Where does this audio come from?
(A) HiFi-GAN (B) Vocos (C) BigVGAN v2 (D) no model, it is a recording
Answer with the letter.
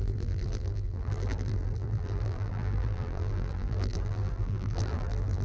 C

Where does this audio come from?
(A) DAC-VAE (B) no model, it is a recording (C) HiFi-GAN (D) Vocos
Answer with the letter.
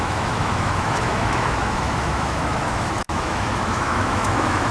A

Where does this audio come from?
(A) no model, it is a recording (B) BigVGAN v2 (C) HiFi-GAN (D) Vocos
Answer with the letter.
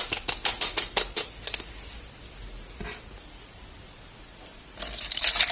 A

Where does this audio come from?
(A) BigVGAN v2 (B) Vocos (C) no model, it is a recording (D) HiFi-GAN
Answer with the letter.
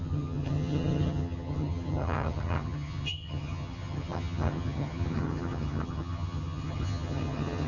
D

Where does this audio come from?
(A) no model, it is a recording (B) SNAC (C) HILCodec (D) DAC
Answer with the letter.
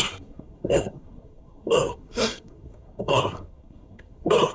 B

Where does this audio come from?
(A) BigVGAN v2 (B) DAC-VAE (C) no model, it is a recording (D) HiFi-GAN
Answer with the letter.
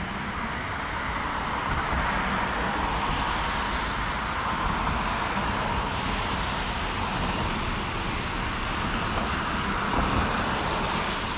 C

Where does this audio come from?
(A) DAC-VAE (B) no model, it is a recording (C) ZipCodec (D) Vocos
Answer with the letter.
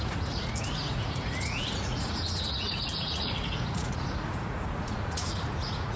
D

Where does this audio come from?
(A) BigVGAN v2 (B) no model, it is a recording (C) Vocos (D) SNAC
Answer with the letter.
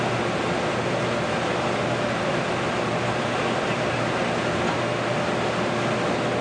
B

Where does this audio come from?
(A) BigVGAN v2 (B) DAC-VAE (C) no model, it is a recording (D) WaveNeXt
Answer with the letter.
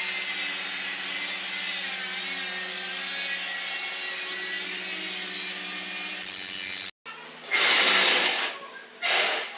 C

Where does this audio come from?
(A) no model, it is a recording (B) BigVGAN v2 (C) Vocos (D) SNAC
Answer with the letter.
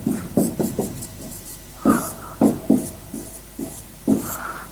B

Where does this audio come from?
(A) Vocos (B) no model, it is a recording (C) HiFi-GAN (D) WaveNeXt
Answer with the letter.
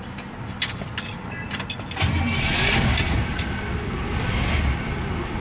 B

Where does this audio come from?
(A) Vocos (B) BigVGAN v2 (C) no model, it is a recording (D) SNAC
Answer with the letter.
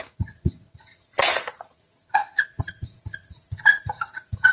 A